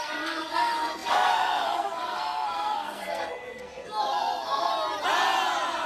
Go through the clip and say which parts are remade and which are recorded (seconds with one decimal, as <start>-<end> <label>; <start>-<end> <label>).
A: 0.0-4.7 remade; 4.7-5.9 recorded